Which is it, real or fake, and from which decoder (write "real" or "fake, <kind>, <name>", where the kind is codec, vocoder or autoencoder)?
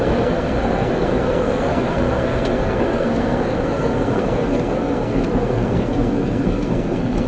fake, codec, SNAC